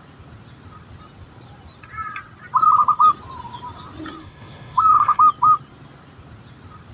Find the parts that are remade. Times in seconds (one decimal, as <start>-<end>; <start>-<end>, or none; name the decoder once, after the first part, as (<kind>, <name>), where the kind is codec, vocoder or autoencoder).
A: 4.2-5.3 (autoencoder, DAC-VAE)